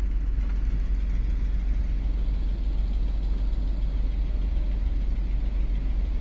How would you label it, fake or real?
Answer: real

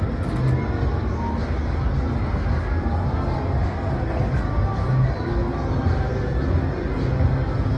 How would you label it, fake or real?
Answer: real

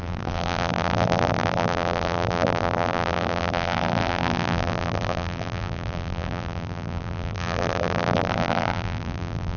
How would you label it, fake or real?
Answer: fake